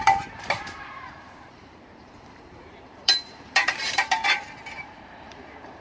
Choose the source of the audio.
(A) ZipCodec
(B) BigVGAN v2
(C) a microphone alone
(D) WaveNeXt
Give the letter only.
B